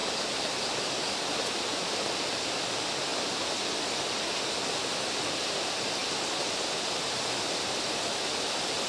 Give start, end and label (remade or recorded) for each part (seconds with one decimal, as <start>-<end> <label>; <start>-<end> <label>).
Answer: 0.0-8.9 recorded